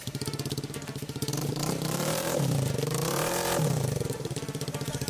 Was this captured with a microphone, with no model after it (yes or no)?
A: no